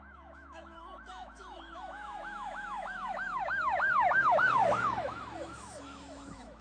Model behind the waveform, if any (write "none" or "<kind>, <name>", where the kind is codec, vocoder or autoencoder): autoencoder, DAC-VAE